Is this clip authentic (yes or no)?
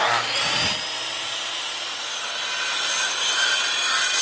yes